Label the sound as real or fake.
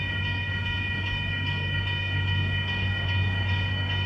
fake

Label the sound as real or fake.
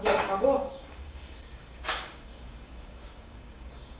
fake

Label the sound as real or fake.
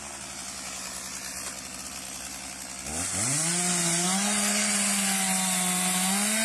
real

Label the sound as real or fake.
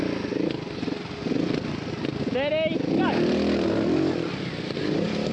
real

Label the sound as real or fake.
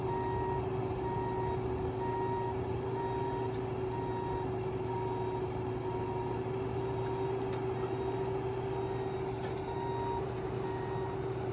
real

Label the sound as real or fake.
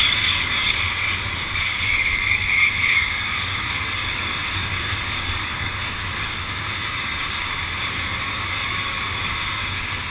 fake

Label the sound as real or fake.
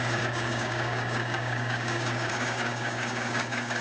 fake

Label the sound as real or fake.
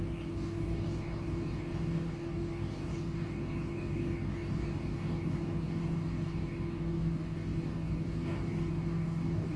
fake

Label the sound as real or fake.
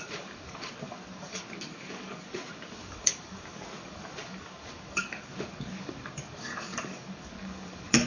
fake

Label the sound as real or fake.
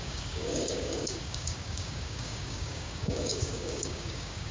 fake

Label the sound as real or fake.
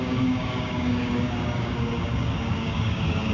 fake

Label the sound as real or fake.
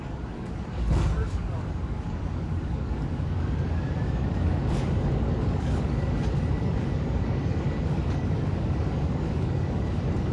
fake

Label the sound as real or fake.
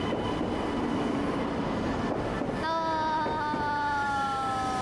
real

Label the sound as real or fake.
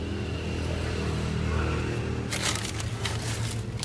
real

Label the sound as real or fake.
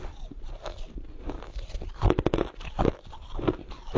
real